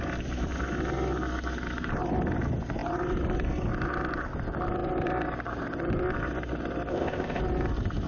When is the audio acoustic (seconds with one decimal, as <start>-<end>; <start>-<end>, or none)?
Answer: 0.0-6.9; 7.4-8.1